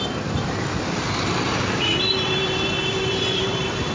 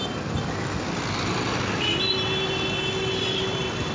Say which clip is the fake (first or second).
first